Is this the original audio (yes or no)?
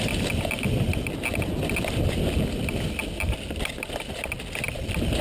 yes